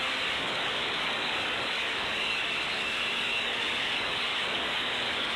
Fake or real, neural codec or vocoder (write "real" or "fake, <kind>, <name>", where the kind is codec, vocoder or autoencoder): fake, codec, DAC